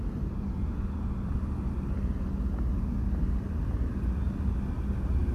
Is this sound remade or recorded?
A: recorded